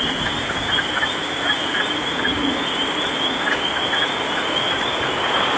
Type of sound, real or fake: real